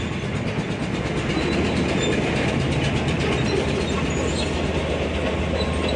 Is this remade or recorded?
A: recorded